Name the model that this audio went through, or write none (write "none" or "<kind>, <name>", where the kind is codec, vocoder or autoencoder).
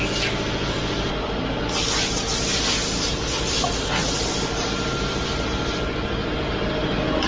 none